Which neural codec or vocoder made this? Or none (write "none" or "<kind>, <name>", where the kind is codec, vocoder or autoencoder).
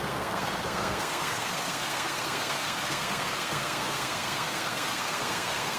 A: codec, SNAC